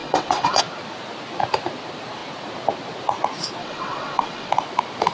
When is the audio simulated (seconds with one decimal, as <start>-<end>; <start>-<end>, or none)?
0.0-0.6; 3.6-4.5

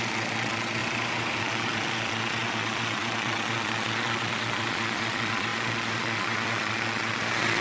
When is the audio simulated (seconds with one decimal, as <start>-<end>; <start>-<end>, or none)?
0.0-0.8; 1.4-7.6

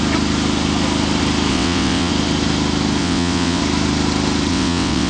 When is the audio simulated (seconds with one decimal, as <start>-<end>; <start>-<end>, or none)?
1.5-2.1; 3.0-3.6; 4.5-5.1

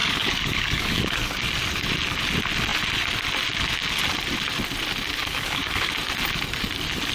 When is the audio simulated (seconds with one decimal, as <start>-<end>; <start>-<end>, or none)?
0.0-1.5; 5.2-5.9

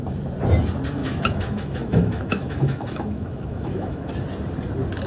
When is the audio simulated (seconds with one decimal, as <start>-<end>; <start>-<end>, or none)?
1.0-4.1